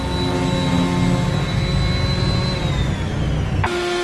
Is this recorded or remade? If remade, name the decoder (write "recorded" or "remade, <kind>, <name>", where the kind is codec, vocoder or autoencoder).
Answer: recorded